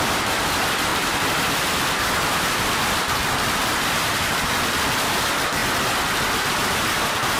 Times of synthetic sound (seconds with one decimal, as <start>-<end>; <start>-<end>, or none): none